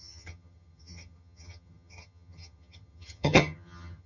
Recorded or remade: remade